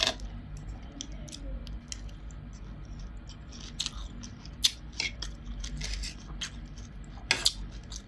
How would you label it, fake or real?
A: real